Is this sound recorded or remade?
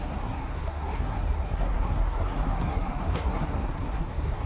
remade